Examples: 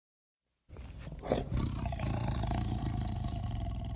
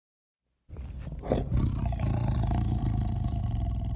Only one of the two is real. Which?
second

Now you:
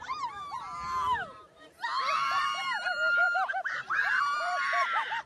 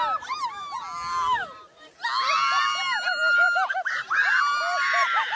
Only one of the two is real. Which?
second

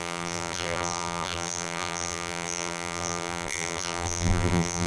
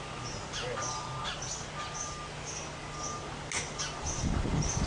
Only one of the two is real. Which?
second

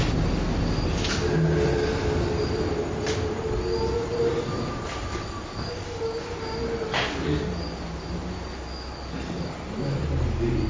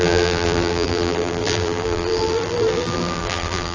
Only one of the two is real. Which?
first